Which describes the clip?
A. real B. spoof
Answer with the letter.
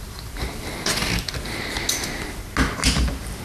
A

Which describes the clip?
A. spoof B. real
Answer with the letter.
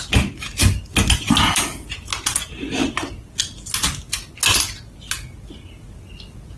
B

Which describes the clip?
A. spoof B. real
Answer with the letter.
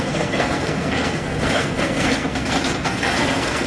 A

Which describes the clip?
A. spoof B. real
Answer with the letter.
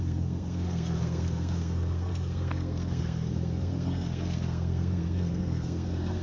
A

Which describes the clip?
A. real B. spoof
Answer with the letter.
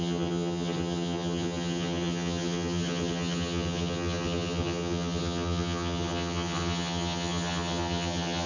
B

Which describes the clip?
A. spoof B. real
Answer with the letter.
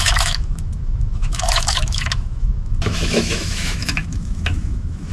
A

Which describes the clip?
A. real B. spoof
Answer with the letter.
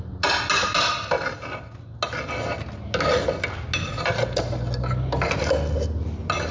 A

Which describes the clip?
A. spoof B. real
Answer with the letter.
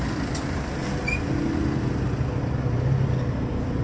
B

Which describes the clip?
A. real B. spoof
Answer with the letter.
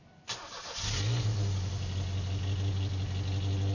A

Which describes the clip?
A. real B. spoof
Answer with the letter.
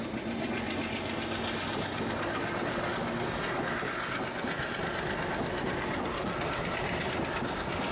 A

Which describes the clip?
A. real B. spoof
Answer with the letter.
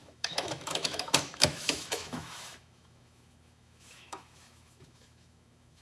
B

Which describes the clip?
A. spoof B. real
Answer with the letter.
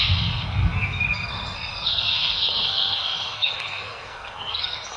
A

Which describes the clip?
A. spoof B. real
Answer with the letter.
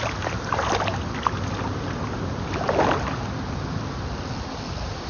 B